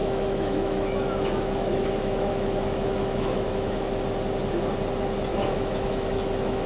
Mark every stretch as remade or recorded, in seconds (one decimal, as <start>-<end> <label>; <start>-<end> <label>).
0.0-4.0 remade; 4.0-5.3 recorded; 5.3-6.7 remade